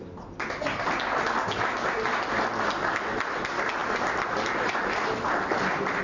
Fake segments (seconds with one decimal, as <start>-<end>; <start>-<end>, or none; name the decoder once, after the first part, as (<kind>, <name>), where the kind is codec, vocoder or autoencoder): none